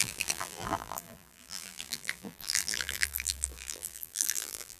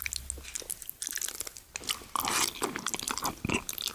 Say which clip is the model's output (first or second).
first